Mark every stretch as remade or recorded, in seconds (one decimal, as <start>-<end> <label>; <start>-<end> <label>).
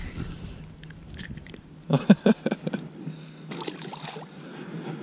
0.0-2.0 remade; 2.0-5.0 recorded